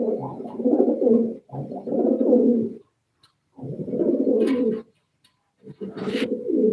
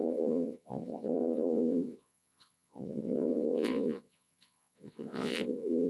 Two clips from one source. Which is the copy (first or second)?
second